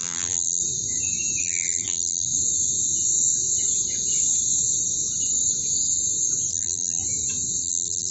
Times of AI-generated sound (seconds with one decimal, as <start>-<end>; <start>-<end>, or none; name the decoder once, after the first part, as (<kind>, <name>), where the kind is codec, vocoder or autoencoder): 0.0-0.6 (vocoder, BigVGAN v2); 1.4-2.3; 6.5-7.0; 7.6-8.1

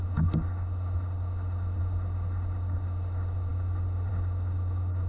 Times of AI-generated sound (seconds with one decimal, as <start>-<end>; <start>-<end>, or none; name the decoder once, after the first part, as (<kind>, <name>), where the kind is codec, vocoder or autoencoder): 0.0-5.1 (autoencoder, DAC-VAE)